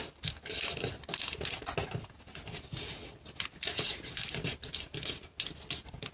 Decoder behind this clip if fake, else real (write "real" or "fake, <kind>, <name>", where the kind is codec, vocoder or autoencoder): real